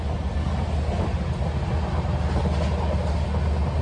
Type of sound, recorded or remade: recorded